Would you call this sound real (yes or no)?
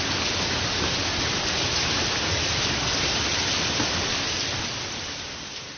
yes